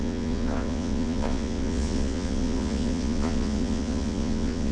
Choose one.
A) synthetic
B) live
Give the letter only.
A